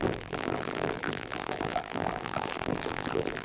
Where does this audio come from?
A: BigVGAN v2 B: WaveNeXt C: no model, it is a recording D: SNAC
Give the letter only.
A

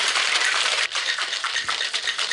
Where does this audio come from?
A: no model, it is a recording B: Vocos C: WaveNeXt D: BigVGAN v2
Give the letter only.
D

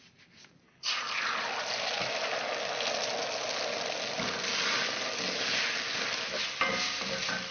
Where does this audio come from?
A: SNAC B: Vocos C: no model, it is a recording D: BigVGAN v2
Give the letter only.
C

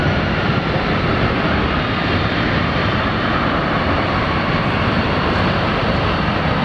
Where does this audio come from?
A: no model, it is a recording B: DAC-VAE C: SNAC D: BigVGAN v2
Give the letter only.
D